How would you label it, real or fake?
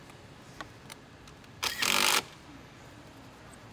fake